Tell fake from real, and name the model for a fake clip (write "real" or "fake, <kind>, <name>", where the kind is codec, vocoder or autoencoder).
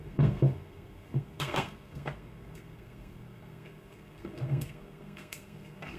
fake, codec, SNAC